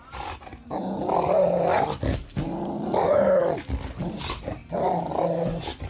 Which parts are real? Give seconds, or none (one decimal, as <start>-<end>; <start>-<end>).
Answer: 0.0-5.9